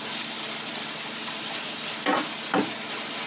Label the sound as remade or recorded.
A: recorded